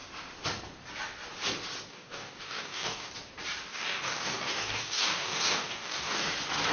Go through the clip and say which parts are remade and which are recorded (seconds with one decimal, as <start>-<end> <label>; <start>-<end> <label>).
0.0-1.9 recorded; 1.9-3.1 remade; 3.1-3.7 recorded; 3.7-6.3 remade; 6.3-6.7 recorded